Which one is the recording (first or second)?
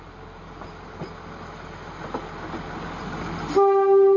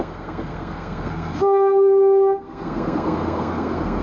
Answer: first